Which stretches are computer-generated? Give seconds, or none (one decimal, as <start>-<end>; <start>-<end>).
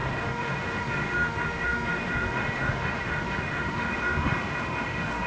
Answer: 0.0-5.3